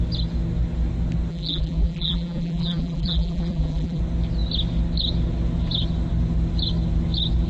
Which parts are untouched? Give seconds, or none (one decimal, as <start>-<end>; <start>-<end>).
0.0-1.3; 4.0-7.5